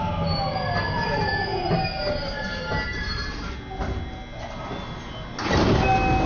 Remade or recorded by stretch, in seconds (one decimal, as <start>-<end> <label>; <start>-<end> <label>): 0.0-6.3 recorded